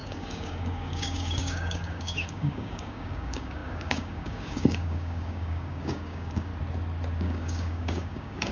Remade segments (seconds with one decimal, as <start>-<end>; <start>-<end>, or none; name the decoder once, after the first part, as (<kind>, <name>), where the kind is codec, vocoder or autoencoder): 0.0-6.5 (codec, DAC); 7.2-8.5